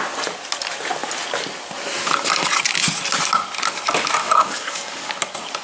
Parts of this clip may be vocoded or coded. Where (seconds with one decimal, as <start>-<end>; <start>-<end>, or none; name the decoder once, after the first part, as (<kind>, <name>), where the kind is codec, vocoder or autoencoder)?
4.2-5.1 (codec, DAC)